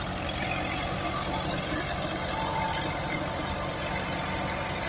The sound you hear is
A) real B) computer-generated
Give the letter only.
B